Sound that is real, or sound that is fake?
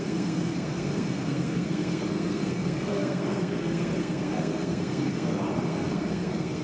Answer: fake